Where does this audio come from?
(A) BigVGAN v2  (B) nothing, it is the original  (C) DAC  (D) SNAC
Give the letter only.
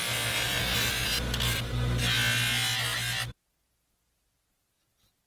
B